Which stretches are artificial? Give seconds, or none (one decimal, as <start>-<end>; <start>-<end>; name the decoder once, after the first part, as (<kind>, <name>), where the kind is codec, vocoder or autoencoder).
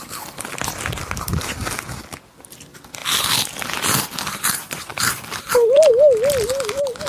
3.0-4.0 (vocoder, BigVGAN v2); 4.9-5.9